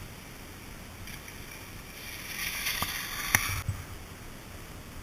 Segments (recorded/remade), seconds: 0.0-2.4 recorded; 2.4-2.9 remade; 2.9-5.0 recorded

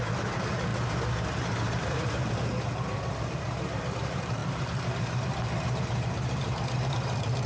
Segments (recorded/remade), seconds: 0.0-7.5 remade